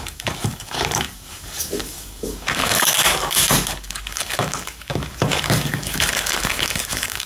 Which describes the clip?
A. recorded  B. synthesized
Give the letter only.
B